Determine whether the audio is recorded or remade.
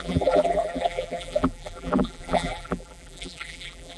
remade